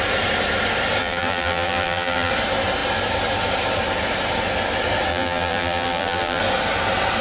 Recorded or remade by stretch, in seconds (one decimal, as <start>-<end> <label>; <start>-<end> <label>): 0.0-1.0 recorded; 1.0-2.3 remade; 2.3-5.1 recorded; 5.1-6.4 remade; 6.4-7.2 recorded